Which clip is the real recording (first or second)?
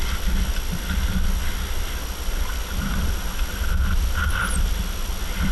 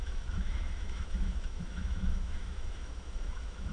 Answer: first